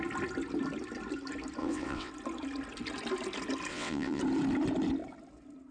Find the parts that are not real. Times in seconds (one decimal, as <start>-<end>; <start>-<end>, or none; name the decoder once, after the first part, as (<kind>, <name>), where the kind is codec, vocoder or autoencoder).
1.6-2.1 (vocoder, WaveNeXt); 3.7-4.2